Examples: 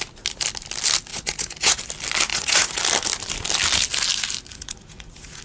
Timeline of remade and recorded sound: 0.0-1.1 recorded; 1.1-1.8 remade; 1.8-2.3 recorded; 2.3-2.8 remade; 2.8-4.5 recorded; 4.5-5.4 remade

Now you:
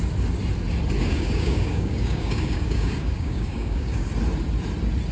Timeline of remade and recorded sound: 0.0-1.0 recorded; 1.0-4.1 remade; 4.1-5.1 recorded

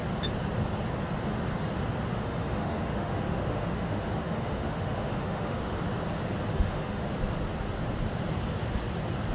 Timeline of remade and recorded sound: 0.0-2.1 recorded; 2.1-5.8 remade; 5.8-6.5 recorded; 6.5-7.1 remade; 7.1-9.3 recorded

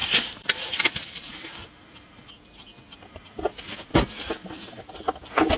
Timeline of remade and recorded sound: 0.0-2.3 remade; 2.3-3.9 recorded; 3.9-5.0 remade; 5.0-5.6 recorded

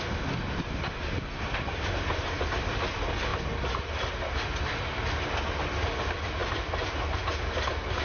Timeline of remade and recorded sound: 0.0-8.0 recorded

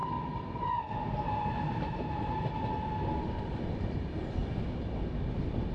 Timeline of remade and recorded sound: 0.0-3.4 recorded; 3.4-4.4 remade; 4.4-5.7 recorded

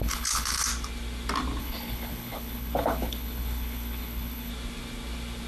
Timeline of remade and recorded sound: 0.0-0.7 remade; 0.7-1.6 recorded; 1.6-4.5 remade; 4.5-5.5 recorded

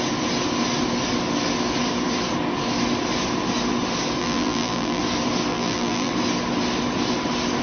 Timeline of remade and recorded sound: 0.0-4.2 recorded; 4.2-5.0 remade; 5.0-5.5 recorded; 5.5-6.1 remade; 6.1-7.6 recorded